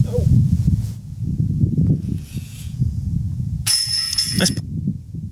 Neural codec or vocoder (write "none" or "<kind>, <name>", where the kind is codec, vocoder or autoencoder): vocoder, Vocos